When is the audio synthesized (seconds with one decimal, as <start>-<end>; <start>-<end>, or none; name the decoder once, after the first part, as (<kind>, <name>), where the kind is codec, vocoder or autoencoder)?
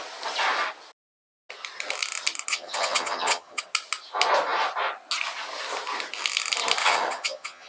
2.5-3.6 (vocoder, HiFi-GAN); 6.8-7.7